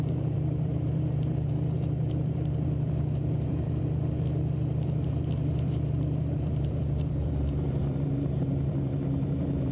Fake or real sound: fake